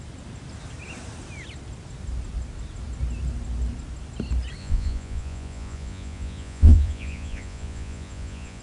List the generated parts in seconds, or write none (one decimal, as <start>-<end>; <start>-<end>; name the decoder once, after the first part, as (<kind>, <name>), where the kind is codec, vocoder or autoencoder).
4.6-8.6 (vocoder, Vocos)

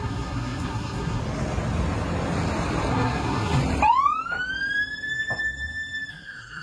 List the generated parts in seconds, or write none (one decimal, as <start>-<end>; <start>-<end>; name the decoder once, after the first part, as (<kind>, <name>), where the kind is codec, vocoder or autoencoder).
0.0-1.2 (codec, SNAC); 2.9-3.6; 6.1-6.6